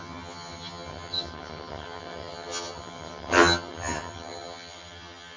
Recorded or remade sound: remade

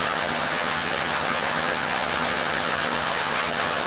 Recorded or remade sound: remade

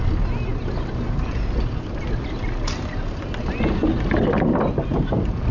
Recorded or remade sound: recorded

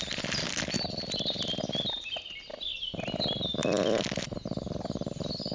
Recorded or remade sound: recorded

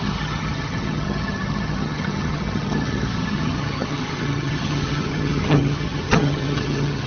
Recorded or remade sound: remade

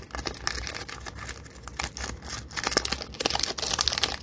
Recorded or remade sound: recorded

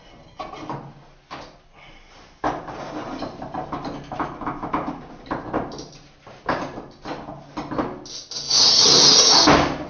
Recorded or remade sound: recorded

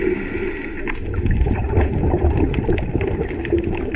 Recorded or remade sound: recorded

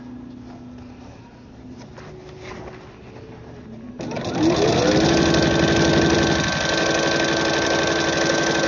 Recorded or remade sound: recorded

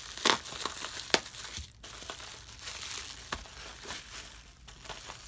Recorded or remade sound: recorded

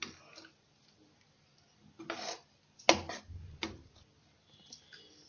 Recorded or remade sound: recorded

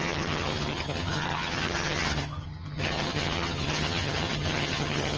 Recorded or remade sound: remade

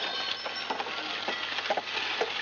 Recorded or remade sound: recorded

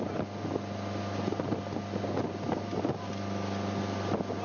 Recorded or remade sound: recorded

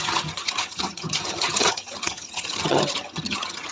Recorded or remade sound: remade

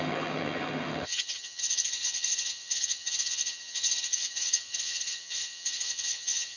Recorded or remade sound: remade